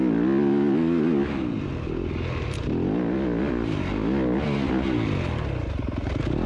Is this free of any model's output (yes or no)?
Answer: yes